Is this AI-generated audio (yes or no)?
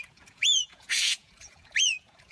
yes